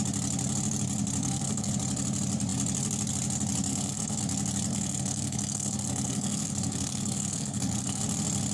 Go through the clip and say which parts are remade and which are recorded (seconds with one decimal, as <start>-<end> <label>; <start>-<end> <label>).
0.0-1.2 recorded; 1.2-1.7 remade; 1.7-3.7 recorded; 3.7-4.2 remade; 4.2-4.7 recorded; 4.7-8.0 remade; 8.0-8.5 recorded